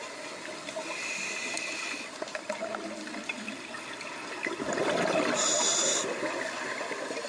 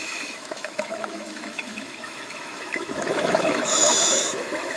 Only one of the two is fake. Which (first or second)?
second